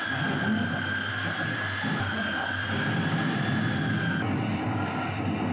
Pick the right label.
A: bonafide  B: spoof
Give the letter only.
A